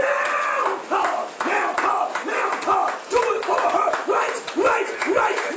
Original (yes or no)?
yes